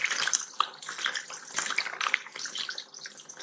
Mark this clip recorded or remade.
recorded